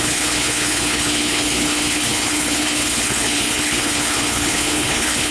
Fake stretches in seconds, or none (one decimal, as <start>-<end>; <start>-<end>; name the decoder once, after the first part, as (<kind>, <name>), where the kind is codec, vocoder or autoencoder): 0.0-5.3 (codec, HILCodec)